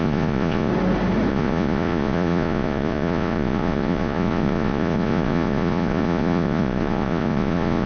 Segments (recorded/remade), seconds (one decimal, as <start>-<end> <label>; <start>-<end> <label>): 0.0-0.7 remade; 0.7-1.3 recorded; 1.3-7.9 remade